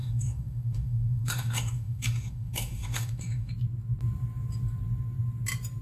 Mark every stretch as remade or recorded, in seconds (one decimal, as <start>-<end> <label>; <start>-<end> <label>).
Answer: 0.0-3.5 remade; 3.5-5.8 recorded